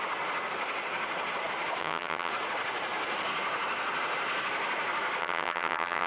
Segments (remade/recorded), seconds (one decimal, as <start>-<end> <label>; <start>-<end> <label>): 0.0-1.8 recorded; 1.8-2.3 remade; 2.3-5.2 recorded; 5.2-6.1 remade